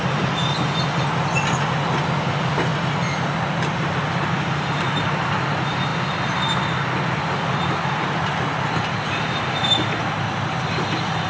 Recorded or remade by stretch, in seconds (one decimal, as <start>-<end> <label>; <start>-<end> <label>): 0.0-11.3 recorded